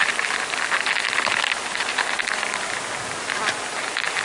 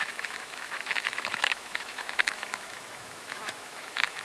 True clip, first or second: first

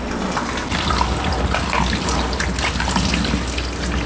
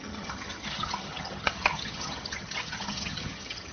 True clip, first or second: first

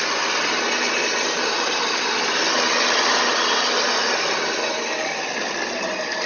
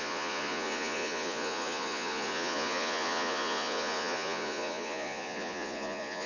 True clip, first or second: first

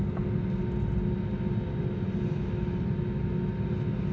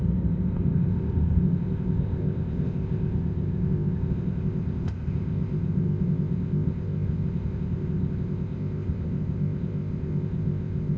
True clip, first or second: first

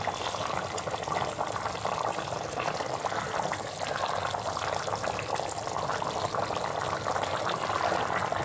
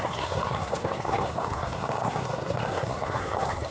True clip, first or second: first